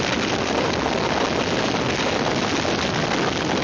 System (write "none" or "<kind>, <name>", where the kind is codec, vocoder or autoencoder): none